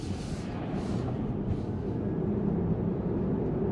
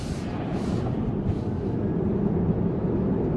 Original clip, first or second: first